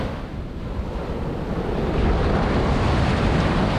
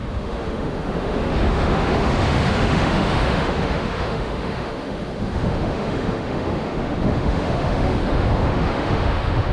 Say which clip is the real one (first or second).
first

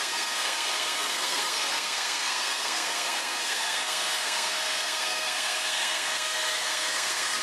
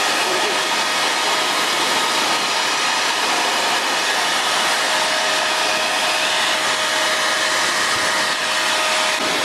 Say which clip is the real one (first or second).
second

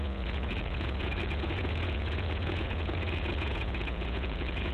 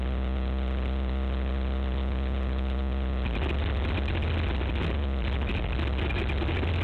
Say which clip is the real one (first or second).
second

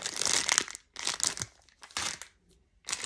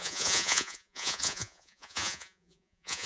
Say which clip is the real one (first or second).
first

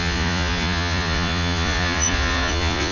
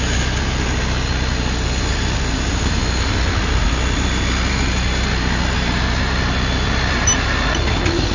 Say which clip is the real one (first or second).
second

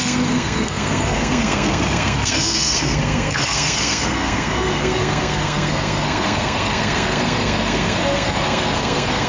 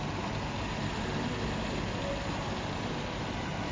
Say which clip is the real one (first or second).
second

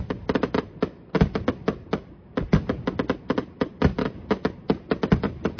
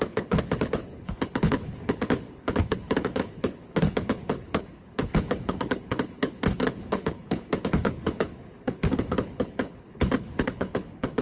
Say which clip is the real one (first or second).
first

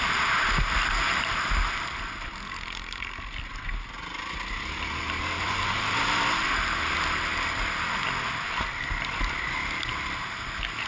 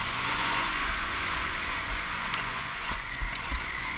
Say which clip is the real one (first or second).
first